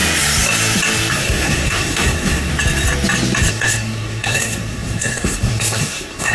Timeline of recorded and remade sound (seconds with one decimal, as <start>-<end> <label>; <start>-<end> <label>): 0.0-1.1 recorded; 1.1-2.5 remade; 2.5-3.5 recorded; 3.5-6.3 remade